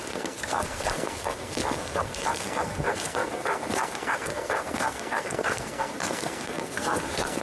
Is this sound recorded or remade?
remade